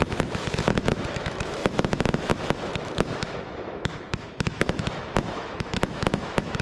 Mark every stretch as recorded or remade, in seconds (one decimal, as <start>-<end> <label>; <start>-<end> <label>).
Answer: 0.0-6.6 remade